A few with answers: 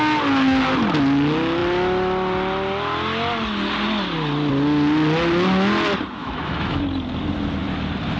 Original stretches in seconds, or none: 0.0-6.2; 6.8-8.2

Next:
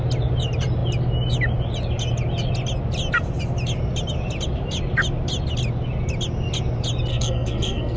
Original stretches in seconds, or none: 0.0-7.1

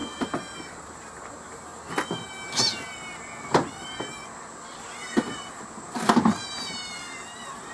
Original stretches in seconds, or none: 1.7-4.4

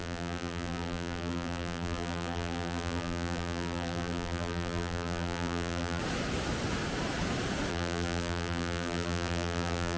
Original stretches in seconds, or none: 6.0-7.7

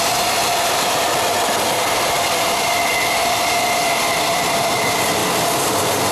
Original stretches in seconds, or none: 0.0-5.2

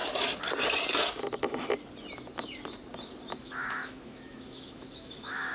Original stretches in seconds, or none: 0.0-3.3

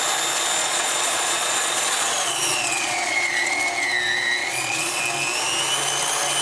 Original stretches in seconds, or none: 0.0-0.6; 3.5-4.4; 5.0-6.4

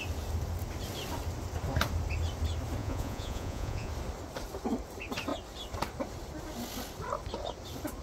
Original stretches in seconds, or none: 0.0-2.8; 3.9-8.0